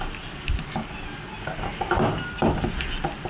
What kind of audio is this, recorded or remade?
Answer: recorded